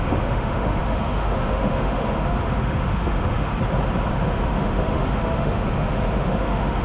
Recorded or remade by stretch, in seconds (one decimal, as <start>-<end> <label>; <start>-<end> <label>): 0.0-3.5 remade; 3.5-4.1 recorded; 4.1-6.8 remade